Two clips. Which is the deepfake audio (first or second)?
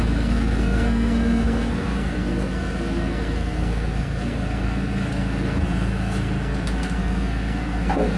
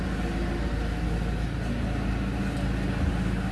first